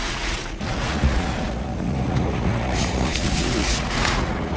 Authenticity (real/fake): fake